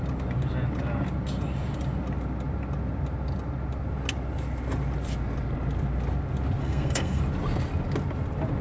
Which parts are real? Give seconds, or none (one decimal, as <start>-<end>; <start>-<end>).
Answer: 0.0-6.6; 7.2-8.6